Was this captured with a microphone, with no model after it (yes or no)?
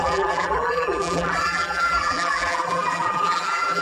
no